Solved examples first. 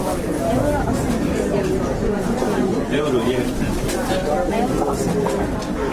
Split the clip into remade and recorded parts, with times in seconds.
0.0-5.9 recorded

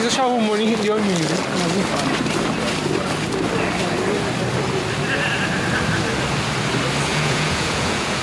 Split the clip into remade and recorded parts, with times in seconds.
0.0-7.1 recorded; 7.1-8.2 remade

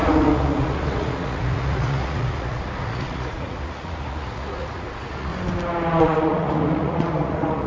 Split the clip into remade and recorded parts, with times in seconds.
0.0-5.3 remade; 5.3-6.0 recorded; 6.0-7.7 remade

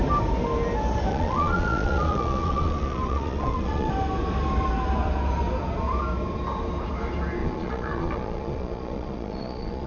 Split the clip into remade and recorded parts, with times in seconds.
0.0-1.1 recorded; 1.1-3.9 remade; 3.9-7.4 recorded; 7.4-9.9 remade